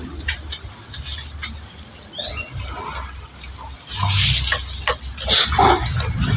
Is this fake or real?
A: real